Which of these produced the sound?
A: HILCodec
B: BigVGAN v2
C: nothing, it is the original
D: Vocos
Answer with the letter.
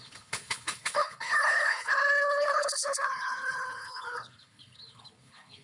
A